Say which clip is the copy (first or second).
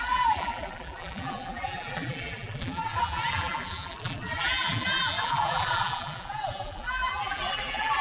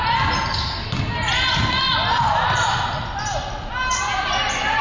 first